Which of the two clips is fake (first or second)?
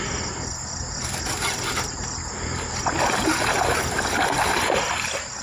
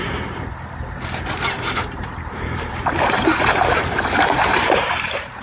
second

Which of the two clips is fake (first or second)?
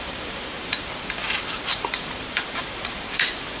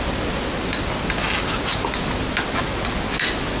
first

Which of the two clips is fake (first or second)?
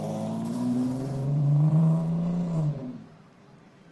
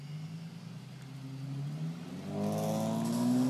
first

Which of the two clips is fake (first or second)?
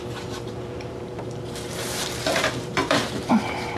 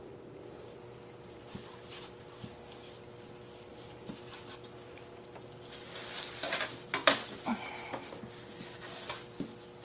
first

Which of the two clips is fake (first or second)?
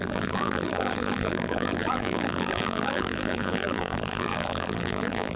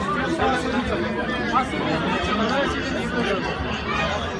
first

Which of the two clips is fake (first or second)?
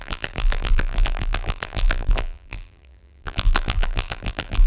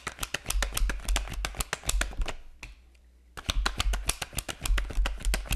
first